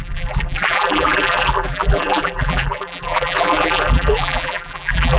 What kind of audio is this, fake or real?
fake